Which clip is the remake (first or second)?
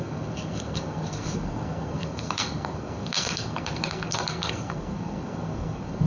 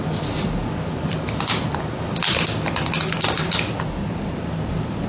first